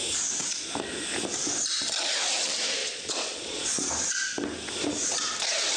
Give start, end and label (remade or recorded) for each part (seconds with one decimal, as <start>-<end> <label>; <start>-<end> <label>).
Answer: 0.0-2.8 recorded; 2.8-3.9 remade; 3.9-5.8 recorded